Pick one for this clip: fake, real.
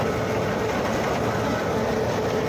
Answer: real